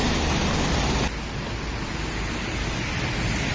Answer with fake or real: real